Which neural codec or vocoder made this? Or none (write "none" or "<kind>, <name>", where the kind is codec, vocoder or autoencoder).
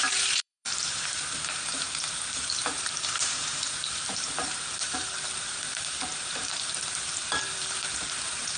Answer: vocoder, BigVGAN v2